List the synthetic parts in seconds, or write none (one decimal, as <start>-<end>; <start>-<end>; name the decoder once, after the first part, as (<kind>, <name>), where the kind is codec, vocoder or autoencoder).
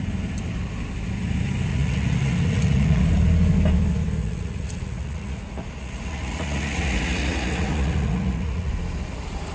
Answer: 1.7-3.0 (vocoder, Vocos); 4.2-8.7